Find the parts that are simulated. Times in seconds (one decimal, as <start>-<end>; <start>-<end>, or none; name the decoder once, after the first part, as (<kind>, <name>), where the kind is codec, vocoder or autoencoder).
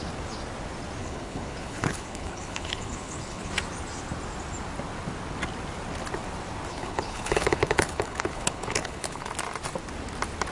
1.0-3.5 (codec, HILCodec); 6.7-9.3